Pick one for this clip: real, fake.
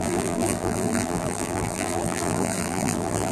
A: fake